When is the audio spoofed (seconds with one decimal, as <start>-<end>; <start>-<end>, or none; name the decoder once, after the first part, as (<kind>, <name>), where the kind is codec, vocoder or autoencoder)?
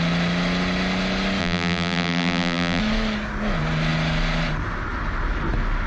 1.4-2.8 (vocoder, BigVGAN v2)